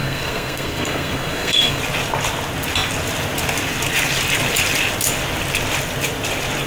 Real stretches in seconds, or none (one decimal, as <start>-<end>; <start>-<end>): 1.8-6.7